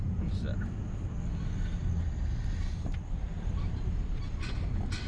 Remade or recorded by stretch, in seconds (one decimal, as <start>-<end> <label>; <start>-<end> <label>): 0.0-5.1 recorded